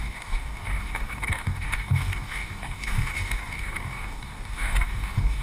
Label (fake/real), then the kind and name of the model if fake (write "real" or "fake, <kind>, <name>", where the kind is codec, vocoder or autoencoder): fake, codec, DAC